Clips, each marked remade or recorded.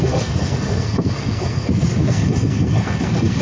remade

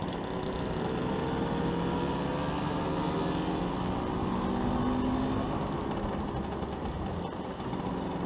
recorded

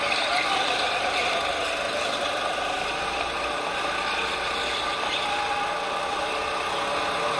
recorded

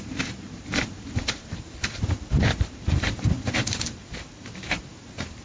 remade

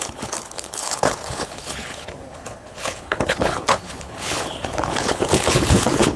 remade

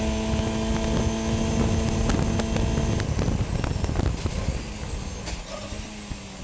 recorded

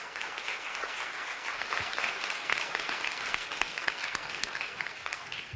remade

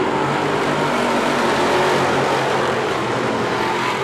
recorded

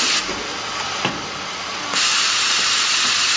recorded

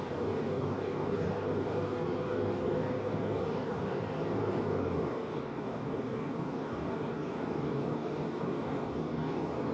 remade